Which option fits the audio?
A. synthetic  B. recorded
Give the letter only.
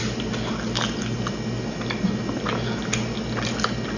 B